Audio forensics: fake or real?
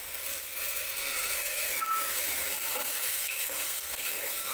fake